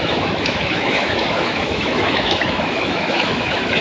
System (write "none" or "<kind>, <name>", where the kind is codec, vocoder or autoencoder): autoencoder, DAC-VAE